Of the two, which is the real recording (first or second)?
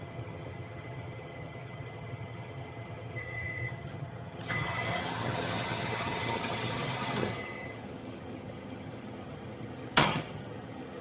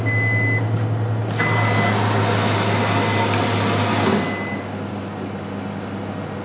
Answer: second